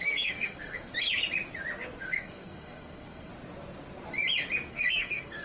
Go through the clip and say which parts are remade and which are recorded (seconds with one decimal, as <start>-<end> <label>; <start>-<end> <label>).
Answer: 0.0-0.9 remade; 0.9-2.0 recorded; 2.0-3.3 remade; 3.3-4.7 recorded; 4.7-5.4 remade